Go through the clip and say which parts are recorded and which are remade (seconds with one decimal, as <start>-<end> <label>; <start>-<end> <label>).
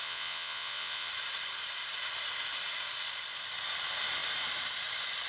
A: 0.0-1.1 remade; 1.1-5.3 recorded